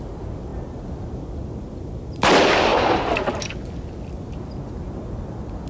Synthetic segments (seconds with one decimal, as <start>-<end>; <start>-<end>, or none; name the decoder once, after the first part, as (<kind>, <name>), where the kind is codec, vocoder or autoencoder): none

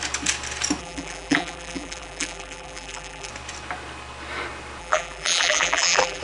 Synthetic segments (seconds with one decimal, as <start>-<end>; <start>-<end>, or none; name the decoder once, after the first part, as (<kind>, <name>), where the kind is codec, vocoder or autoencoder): 0.8-3.3 (vocoder, BigVGAN v2); 4.8-6.2

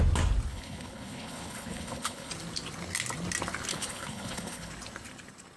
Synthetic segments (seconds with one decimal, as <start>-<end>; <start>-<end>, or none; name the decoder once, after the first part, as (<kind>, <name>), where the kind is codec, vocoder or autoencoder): 0.5-2.3 (codec, HILCodec); 3.7-4.7

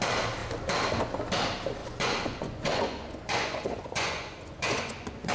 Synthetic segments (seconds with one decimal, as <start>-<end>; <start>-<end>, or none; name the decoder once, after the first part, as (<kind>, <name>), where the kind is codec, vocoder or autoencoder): 1.8-5.3 (vocoder, Vocos)

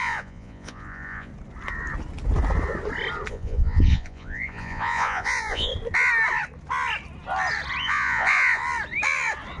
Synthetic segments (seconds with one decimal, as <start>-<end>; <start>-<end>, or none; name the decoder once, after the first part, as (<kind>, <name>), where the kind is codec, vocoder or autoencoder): 0.0-1.3 (vocoder, Vocos); 3.3-5.7; 7.8-8.6

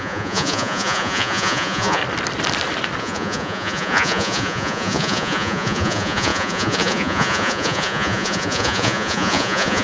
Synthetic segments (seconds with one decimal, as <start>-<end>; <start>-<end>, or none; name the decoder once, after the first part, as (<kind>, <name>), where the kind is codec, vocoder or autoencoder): 0.0-2.0 (vocoder, Vocos); 3.0-9.8

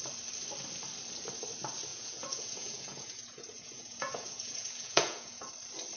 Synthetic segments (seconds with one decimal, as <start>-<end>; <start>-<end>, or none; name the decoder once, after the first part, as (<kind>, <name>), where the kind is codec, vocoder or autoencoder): 1.9-5.5 (vocoder, Vocos)

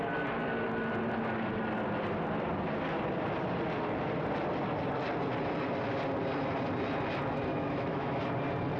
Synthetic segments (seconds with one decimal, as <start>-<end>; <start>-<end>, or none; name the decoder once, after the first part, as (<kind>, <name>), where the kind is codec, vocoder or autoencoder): 7.5-8.2 (autoencoder, DAC-VAE)